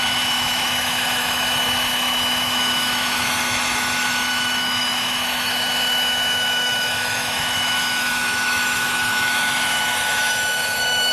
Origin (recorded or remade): remade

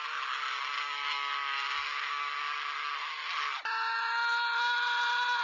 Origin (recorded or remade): recorded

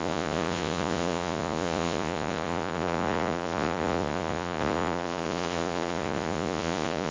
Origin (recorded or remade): remade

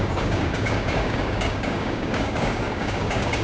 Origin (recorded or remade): remade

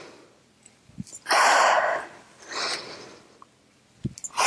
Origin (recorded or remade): recorded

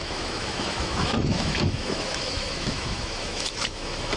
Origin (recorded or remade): remade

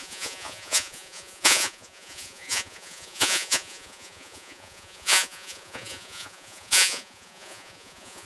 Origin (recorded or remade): remade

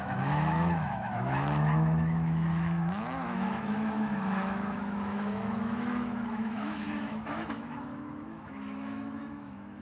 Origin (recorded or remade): remade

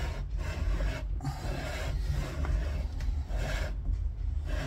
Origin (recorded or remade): recorded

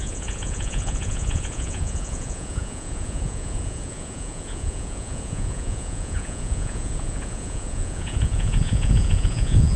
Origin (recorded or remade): remade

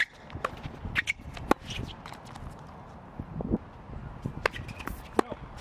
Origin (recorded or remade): recorded